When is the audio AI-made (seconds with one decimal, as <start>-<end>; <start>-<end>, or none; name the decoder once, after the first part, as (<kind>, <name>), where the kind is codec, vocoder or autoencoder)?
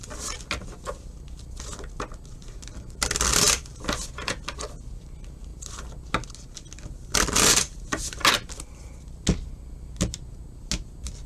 none